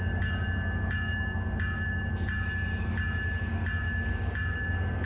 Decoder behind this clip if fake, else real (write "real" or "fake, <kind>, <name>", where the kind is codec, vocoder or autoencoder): real